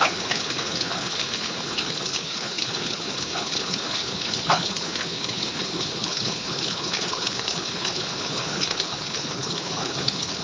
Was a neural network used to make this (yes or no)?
yes